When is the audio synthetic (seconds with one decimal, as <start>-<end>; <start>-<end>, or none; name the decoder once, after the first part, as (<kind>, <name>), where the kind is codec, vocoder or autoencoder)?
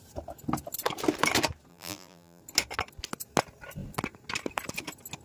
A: 1.7-2.4 (vocoder, BigVGAN v2)